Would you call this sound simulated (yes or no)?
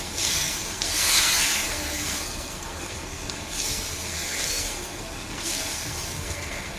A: yes